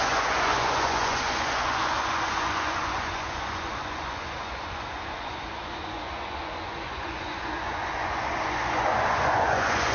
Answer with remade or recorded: remade